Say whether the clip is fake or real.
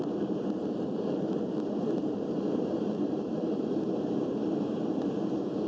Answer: fake